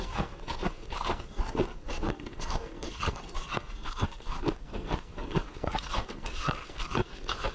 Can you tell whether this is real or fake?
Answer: fake